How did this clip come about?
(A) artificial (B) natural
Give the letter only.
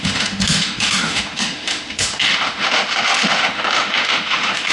A